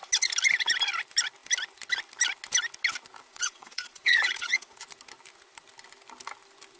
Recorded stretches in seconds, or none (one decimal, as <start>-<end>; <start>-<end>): 0.0-3.3; 4.8-6.8